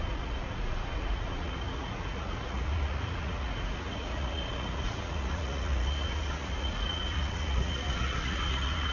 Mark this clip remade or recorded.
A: remade